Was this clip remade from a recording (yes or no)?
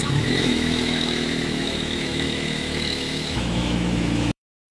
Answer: yes